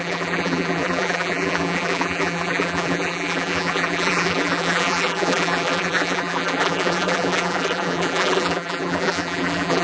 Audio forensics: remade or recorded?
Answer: remade